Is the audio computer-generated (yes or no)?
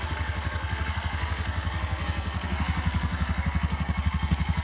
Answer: yes